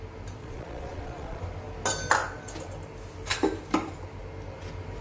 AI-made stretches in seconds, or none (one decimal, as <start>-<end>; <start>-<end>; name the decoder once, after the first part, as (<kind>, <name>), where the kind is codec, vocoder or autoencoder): 0.4-1.4 (vocoder, Vocos)

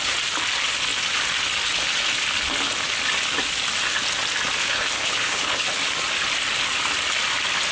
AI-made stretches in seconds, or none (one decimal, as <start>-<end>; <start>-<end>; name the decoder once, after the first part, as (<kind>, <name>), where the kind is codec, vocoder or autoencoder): 4.6-5.7 (codec, HILCodec)

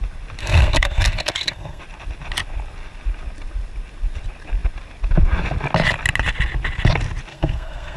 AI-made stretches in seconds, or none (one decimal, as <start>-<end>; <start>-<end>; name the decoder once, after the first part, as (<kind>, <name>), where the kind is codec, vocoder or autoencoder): 0.4-1.8 (codec, SNAC); 7.3-8.0